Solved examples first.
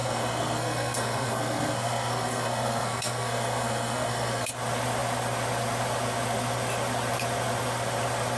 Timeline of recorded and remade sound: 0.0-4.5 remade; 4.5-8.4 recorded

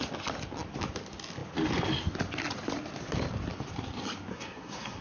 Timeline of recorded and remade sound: 0.0-4.3 recorded; 4.3-5.0 remade

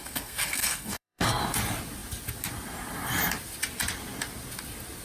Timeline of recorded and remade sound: 0.0-1.4 remade; 1.4-5.0 recorded

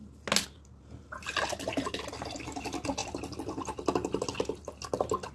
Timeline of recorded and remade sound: 0.0-5.3 recorded

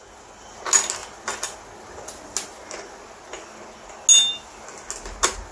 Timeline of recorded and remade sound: 0.0-5.5 recorded

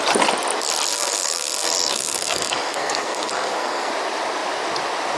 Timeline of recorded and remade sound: 0.0-0.9 recorded; 0.9-3.9 remade; 3.9-5.2 recorded

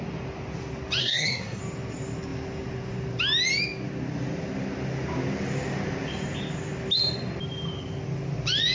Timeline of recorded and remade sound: 0.0-1.0 recorded; 1.0-1.6 remade; 1.6-8.7 recorded

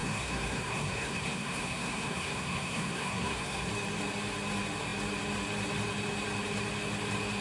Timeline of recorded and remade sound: 0.0-3.7 remade; 3.7-7.4 recorded